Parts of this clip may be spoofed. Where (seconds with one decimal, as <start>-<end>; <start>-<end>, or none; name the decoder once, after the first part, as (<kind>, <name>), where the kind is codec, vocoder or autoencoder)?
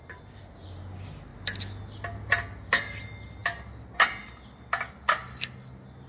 none